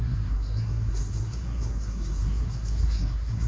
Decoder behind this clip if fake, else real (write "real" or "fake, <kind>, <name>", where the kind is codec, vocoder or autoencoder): fake, codec, SNAC